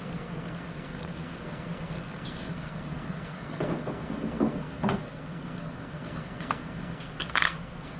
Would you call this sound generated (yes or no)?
yes